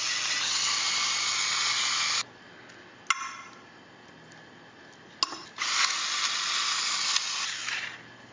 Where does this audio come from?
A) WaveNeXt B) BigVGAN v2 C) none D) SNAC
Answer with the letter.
C